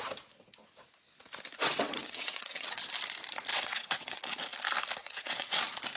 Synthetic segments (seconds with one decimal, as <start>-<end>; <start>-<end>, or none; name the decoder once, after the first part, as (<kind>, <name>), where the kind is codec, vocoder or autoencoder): 1.7-2.8 (vocoder, WaveNeXt); 3.5-4.2; 5.0-5.6